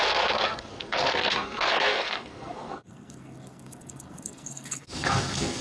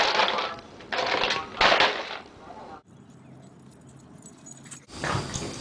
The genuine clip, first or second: second